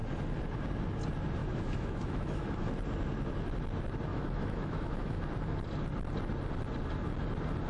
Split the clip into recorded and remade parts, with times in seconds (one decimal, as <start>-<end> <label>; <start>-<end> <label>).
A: 0.0-1.4 recorded; 1.4-2.7 remade; 2.7-4.1 recorded; 4.1-5.2 remade; 5.2-7.7 recorded